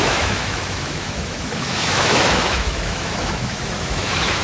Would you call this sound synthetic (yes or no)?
yes